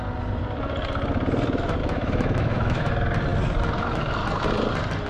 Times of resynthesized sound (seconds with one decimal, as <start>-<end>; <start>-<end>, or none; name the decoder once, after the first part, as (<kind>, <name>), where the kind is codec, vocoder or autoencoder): 1.8-2.9 (autoencoder, DAC-VAE)